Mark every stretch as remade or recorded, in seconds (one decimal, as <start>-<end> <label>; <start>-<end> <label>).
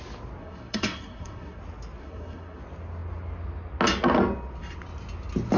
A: 0.0-0.4 recorded; 0.4-1.6 remade; 1.6-2.0 recorded; 2.0-2.6 remade; 2.6-5.6 recorded